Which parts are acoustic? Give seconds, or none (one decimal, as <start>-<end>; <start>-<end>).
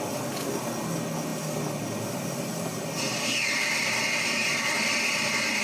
0.0-5.6